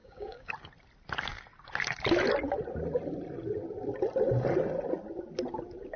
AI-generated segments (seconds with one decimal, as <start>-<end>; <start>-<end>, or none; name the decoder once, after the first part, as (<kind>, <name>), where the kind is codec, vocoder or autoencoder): 0.0-0.5 (codec, DAC)

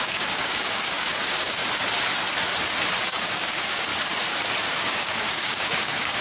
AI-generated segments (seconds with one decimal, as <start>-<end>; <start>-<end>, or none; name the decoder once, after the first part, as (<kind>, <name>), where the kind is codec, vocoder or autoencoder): 0.0-1.6 (codec, DAC); 3.1-3.9; 4.8-6.2

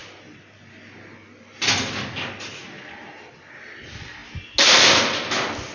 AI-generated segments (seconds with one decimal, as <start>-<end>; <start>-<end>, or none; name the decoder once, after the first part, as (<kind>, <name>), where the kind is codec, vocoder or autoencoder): none

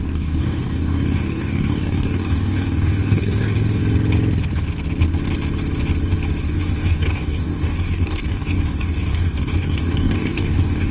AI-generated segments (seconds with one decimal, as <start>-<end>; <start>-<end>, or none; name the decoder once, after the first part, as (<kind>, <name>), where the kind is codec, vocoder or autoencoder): 0.0-3.8 (codec, DAC); 6.4-10.9

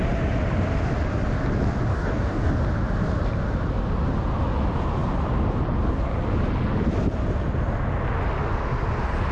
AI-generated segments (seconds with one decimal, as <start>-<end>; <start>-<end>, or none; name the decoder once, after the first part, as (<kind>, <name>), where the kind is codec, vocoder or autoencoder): 1.9-2.5 (codec, DAC)

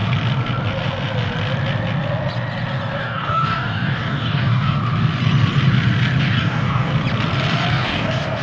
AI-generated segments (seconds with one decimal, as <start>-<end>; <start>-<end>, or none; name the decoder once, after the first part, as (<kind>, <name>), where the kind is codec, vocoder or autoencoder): 3.0-4.8 (codec, DAC); 6.2-6.9; 7.7-8.4

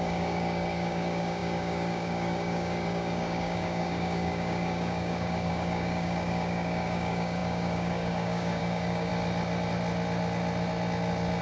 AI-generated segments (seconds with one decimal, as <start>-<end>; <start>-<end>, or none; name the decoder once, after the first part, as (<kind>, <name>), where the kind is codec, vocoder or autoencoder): 0.0-9.1 (codec, DAC)

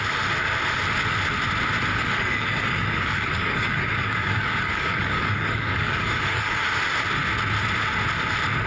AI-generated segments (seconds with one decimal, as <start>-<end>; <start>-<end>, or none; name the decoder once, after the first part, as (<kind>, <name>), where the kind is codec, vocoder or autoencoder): 1.9-6.6 (codec, DAC)